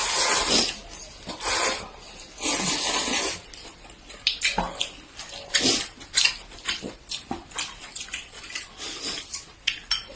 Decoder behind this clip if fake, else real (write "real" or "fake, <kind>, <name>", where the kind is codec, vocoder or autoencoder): real